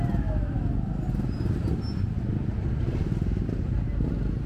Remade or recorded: recorded